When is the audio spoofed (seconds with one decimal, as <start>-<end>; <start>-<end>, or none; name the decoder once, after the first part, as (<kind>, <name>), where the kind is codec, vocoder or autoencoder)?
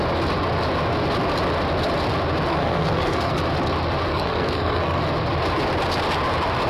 2.5-3.4 (codec, SNAC); 4.1-5.0